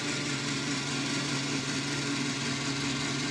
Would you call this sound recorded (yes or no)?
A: yes